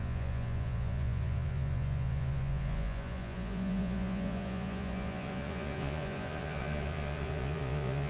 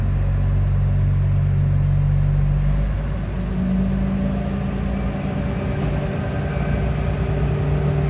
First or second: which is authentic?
second